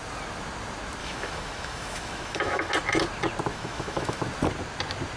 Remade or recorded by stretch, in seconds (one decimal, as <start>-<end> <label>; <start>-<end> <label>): 0.0-1.0 recorded; 1.0-2.7 remade; 2.7-3.5 recorded; 3.5-4.2 remade; 4.2-5.2 recorded